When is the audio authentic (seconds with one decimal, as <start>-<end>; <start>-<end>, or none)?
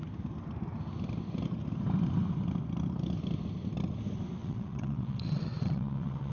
0.0-4.4